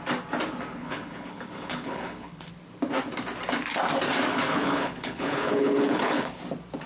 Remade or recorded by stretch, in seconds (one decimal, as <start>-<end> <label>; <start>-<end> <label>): 0.0-0.7 recorded; 0.7-2.5 remade; 2.5-4.3 recorded; 4.3-6.4 remade; 6.4-6.9 recorded